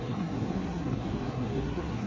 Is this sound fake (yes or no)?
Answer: yes